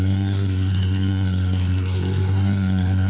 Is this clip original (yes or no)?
no